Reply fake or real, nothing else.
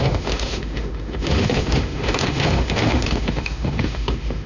fake